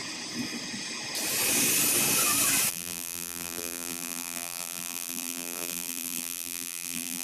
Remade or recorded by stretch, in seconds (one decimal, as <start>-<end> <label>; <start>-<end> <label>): 0.0-2.7 recorded; 2.7-7.2 remade